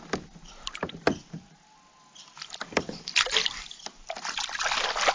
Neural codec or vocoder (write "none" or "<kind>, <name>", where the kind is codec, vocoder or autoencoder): none